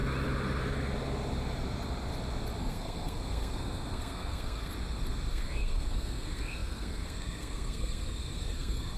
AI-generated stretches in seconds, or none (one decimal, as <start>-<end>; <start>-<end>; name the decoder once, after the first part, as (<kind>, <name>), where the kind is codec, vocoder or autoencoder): 2.6-4.7 (codec, SNAC); 5.3-9.0